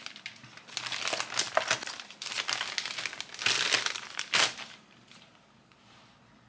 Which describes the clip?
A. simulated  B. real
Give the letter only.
B